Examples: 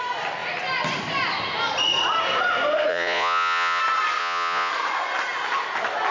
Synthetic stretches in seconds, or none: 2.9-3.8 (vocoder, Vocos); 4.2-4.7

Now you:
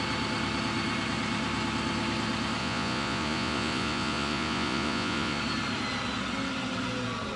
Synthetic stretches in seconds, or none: 2.6-5.4 (vocoder, Vocos)